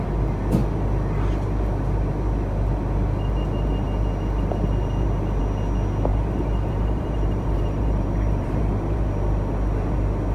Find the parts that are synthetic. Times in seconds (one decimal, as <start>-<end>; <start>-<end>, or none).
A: 6.1-9.1